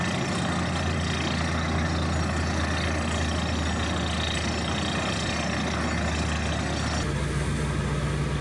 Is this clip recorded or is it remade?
recorded